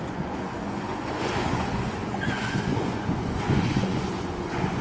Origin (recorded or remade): remade